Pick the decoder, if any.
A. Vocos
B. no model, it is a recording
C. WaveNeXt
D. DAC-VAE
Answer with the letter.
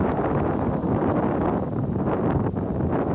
B